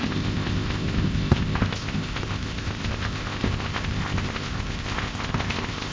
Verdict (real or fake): fake